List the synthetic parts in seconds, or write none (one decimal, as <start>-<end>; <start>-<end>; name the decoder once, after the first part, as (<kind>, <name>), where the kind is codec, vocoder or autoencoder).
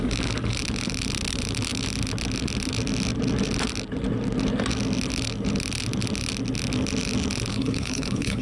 7.5-8.4 (codec, HILCodec)